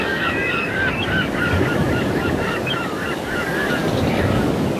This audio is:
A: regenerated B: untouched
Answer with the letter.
A